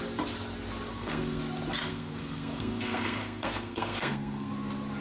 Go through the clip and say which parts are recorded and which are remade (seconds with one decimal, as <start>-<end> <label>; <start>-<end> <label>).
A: 0.0-0.9 recorded; 0.9-1.4 remade; 1.4-1.9 recorded; 1.9-4.5 remade; 4.5-5.0 recorded